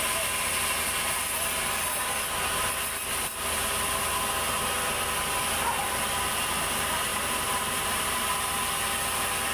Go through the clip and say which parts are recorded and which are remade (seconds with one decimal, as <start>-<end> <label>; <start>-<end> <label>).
0.0-7.1 recorded; 7.1-8.0 remade; 8.0-9.5 recorded